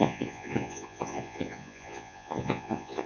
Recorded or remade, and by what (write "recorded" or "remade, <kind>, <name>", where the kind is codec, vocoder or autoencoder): remade, vocoder, Vocos